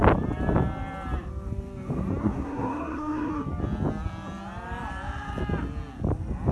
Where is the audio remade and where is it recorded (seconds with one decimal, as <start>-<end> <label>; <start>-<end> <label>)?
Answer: 0.0-2.2 recorded; 2.2-3.3 remade; 3.3-6.5 recorded